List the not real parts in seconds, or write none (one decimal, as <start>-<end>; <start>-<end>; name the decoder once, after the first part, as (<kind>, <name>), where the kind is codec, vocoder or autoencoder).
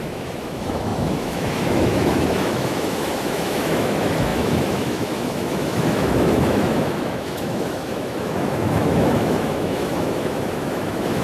0.0-11.2 (autoencoder, DAC-VAE)